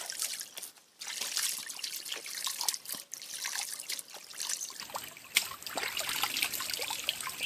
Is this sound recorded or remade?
recorded